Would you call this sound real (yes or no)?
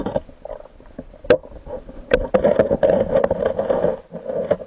yes